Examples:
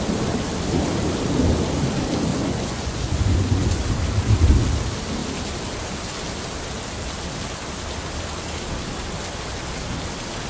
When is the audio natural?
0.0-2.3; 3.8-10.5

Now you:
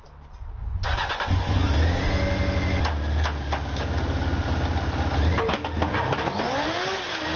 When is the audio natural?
0.0-0.7; 1.7-7.4

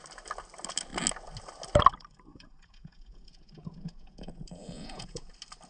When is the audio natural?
0.0-2.3; 5.3-5.7

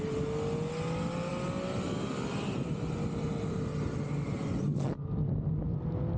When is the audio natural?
0.0-6.2

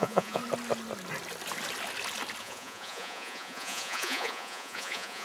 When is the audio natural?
0.4-2.4

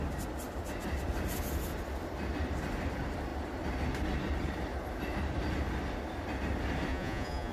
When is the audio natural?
0.0-6.9

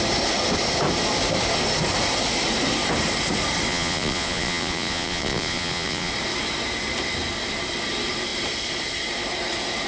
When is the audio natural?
0.0-3.7; 6.1-9.9

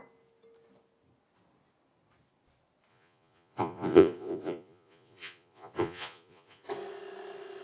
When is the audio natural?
0.0-2.9; 6.7-7.6